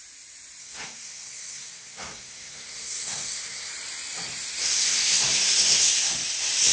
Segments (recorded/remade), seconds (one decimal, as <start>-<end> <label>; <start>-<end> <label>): 0.0-0.6 recorded; 0.6-3.7 remade; 3.7-4.6 recorded; 4.6-6.1 remade; 6.1-6.7 recorded